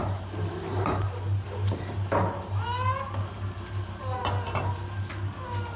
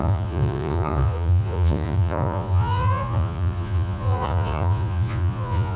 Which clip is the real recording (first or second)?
first